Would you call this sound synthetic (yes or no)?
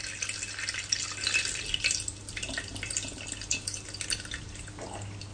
no